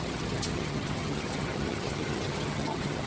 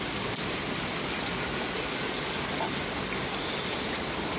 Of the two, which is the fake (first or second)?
first